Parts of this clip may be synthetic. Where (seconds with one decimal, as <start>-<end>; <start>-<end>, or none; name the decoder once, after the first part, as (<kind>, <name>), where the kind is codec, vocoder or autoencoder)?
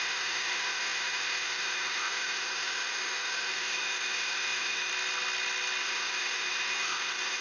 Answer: 0.0-4.9 (autoencoder, DAC-VAE); 5.8-7.4